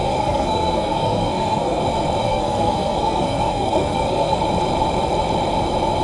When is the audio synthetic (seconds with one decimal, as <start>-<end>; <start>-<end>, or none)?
0.0-1.8; 2.2-4.4